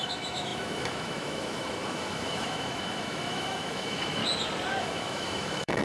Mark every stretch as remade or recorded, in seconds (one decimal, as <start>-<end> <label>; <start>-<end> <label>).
0.0-4.2 remade; 4.2-4.8 recorded; 4.8-5.8 remade